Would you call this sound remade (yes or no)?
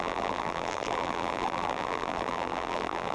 yes